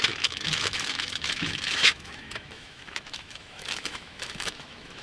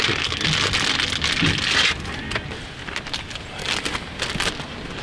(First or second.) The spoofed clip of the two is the first